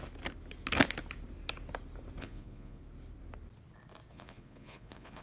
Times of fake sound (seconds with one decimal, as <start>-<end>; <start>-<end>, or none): 2.2-2.8; 4.1-5.2